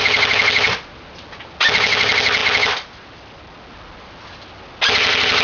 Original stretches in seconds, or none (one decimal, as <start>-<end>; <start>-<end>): 0.0-5.4